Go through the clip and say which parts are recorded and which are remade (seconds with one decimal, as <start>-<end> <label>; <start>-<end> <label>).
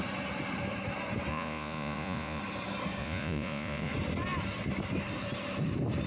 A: 0.0-1.3 recorded; 1.3-2.4 remade; 2.4-3.0 recorded; 3.0-3.9 remade; 3.9-6.1 recorded